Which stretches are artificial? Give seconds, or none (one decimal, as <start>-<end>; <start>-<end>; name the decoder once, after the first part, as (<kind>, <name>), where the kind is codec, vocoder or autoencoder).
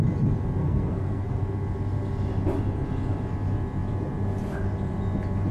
0.6-1.4 (codec, SNAC)